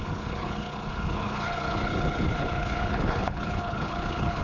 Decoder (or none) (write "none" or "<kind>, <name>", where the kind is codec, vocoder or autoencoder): codec, HILCodec